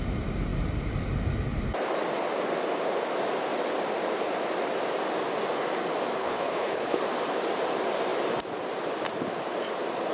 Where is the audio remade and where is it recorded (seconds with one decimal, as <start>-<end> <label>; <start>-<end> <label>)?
0.0-6.2 recorded; 6.2-7.0 remade; 7.0-10.1 recorded